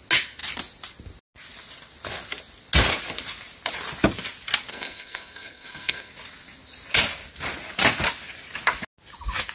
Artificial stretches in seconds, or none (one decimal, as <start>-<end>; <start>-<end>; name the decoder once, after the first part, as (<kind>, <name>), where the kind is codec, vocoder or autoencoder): 4.7-6.1 (codec, SNAC)